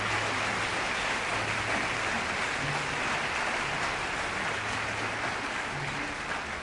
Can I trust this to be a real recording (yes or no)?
yes